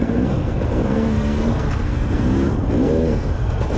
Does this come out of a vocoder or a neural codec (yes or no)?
yes